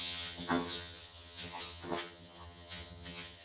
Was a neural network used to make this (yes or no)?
yes